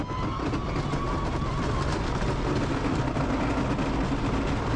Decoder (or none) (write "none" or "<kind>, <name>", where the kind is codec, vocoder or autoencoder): none